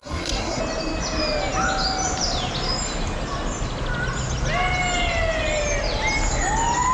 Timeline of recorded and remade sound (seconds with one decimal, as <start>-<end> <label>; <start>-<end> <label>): 0.0-0.6 remade; 0.6-6.9 recorded